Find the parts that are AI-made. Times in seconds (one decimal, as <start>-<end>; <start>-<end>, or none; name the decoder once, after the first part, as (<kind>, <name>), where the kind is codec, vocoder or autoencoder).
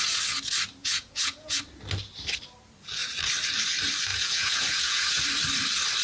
0.8-1.6 (vocoder, Vocos); 4.1-5.2